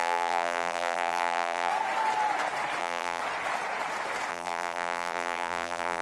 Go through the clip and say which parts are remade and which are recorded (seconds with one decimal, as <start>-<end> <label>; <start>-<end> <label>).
0.0-1.7 remade; 1.7-2.8 recorded; 2.8-3.2 remade; 3.2-4.3 recorded; 4.3-6.0 remade